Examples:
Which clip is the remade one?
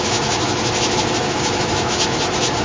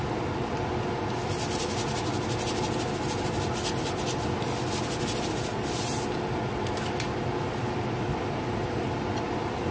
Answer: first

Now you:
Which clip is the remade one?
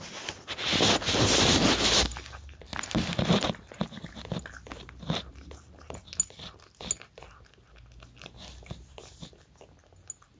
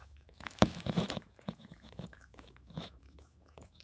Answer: second